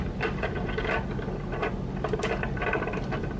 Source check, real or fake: fake